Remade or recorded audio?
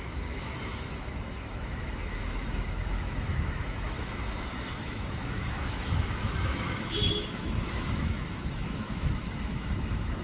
remade